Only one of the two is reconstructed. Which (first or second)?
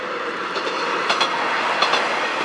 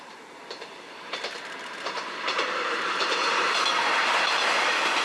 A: second